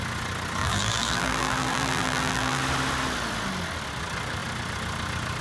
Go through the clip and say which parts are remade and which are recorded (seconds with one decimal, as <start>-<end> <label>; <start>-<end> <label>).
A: 0.0-0.6 recorded; 0.6-2.6 remade; 2.6-5.4 recorded